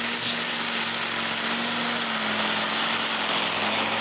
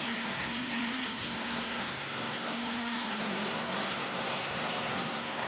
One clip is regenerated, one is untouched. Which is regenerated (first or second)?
second